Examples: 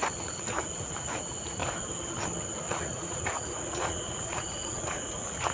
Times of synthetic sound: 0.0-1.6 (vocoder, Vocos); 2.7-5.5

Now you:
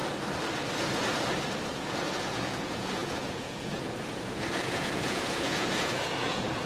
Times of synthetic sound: 1.7-6.7 (vocoder, Vocos)